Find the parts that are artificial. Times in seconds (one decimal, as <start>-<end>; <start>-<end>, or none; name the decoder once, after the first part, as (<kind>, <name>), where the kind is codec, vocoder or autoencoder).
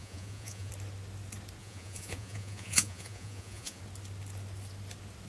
0.0-0.7 (vocoder, Vocos); 1.6-3.8